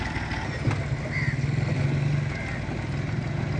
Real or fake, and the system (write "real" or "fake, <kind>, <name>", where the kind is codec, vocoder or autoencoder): real